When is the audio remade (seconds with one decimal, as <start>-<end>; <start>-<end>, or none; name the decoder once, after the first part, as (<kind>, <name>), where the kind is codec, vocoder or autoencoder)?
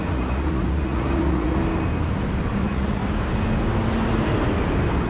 0.0-1.6 (vocoder, Vocos); 2.6-3.0